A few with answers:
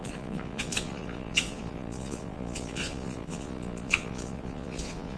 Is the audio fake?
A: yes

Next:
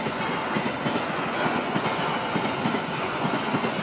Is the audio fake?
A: yes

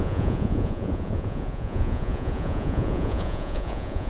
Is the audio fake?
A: yes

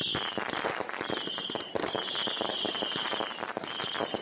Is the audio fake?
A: no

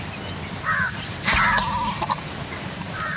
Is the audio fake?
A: no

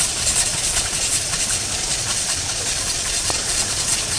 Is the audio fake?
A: yes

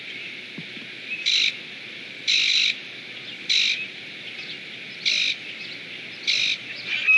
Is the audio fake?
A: no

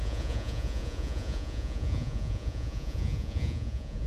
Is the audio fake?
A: yes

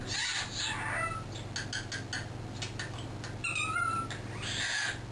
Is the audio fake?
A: no